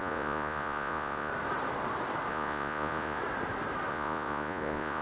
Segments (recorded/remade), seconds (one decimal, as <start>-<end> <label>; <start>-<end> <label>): 0.0-1.3 remade; 1.3-2.3 recorded; 2.3-3.2 remade; 3.2-3.9 recorded; 3.9-5.0 remade